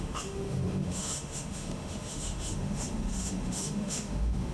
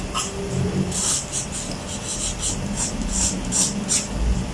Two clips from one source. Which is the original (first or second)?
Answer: second